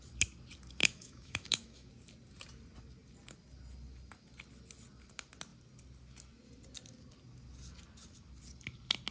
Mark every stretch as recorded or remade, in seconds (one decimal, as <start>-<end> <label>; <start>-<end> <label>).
0.0-0.8 recorded; 0.8-1.9 remade; 1.9-9.1 recorded